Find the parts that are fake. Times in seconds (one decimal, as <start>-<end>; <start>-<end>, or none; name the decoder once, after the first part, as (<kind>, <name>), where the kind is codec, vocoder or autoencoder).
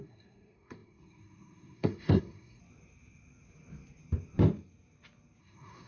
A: 0.0-2.6 (codec, SNAC); 5.4-5.9